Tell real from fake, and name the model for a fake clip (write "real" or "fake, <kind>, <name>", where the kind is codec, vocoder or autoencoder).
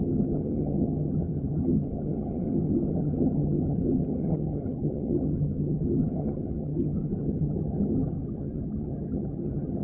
fake, vocoder, HiFi-GAN